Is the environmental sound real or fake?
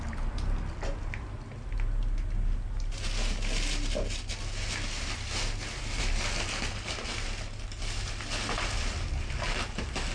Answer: real